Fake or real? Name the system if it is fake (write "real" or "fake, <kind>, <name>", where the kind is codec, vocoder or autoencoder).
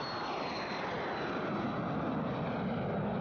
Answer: real